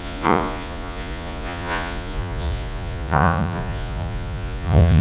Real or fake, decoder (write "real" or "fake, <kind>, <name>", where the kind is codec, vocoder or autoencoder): fake, vocoder, Vocos